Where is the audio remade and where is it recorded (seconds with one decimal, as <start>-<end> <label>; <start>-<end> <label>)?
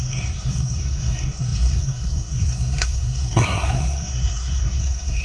0.0-5.2 remade